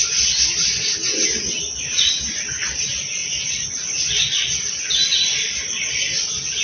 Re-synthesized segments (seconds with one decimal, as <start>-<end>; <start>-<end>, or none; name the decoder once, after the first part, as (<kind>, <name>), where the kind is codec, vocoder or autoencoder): none